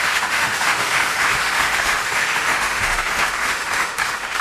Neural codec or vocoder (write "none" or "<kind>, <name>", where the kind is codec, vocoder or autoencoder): autoencoder, DAC-VAE